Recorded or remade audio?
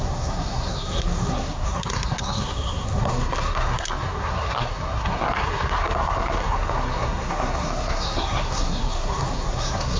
remade